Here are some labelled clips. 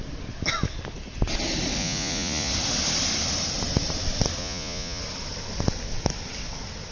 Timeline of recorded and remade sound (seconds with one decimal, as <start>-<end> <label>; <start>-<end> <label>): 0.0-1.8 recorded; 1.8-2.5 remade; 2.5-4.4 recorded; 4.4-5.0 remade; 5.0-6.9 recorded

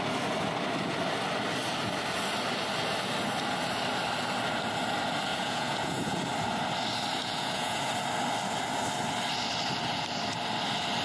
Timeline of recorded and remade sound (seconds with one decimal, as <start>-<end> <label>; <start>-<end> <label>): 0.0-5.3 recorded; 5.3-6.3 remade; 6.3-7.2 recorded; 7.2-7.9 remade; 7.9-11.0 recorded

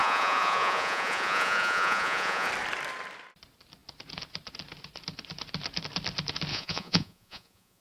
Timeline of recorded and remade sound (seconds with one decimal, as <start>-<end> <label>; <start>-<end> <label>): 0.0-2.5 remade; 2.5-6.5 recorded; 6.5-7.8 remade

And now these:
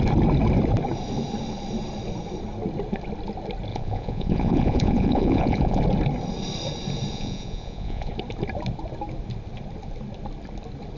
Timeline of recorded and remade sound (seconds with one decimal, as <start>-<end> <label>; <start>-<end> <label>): 0.0-3.7 recorded; 3.7-5.8 remade; 5.8-7.1 recorded; 7.1-8.1 remade; 8.1-11.0 recorded